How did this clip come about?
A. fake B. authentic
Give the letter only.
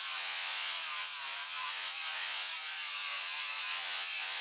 A